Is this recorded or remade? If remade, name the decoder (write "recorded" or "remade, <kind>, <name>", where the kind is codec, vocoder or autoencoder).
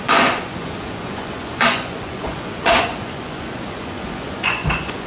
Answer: remade, vocoder, Vocos